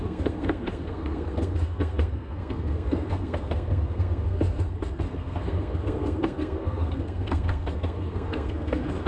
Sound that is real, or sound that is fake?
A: fake